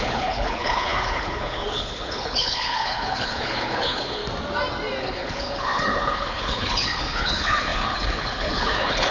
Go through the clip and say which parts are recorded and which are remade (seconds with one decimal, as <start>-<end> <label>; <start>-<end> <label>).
0.0-4.2 remade; 4.2-5.0 recorded; 5.0-9.1 remade